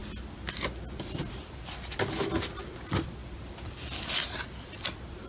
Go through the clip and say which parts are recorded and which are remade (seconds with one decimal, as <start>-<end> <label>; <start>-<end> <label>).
0.0-5.3 recorded